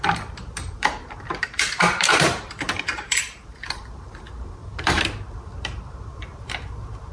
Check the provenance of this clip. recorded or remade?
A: remade